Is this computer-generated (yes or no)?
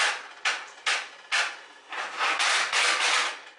no